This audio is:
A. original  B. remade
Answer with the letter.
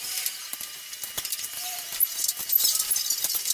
A